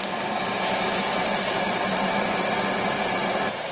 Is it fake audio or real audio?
real